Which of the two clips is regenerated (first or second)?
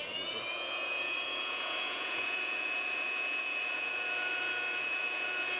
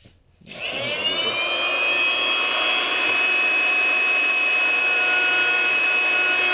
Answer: first